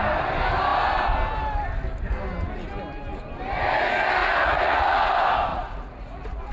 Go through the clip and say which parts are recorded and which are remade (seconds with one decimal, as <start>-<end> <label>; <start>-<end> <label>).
0.0-4.2 recorded; 4.2-5.1 remade; 5.1-5.5 recorded; 5.5-6.5 remade